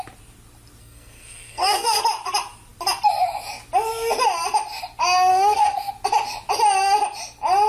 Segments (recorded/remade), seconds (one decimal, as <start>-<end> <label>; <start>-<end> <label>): 0.0-0.8 recorded; 0.8-2.0 remade; 2.0-5.3 recorded; 5.3-5.9 remade; 5.9-7.7 recorded